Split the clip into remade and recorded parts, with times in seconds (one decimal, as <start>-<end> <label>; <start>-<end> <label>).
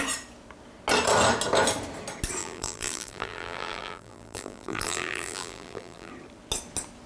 0.0-2.4 recorded; 2.4-6.1 remade; 6.1-7.1 recorded